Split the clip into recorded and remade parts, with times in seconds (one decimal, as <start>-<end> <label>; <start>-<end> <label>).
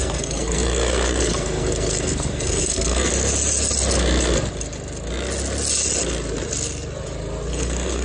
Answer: 0.0-3.1 remade; 3.1-7.5 recorded; 7.5-8.0 remade